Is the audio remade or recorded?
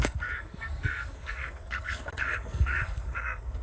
remade